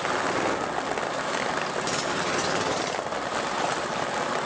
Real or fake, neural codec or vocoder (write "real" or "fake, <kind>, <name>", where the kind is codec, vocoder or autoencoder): real